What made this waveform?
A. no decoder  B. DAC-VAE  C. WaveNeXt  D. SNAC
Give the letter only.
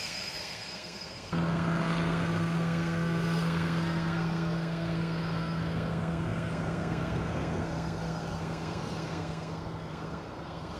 D